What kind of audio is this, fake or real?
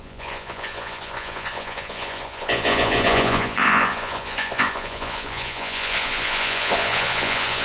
fake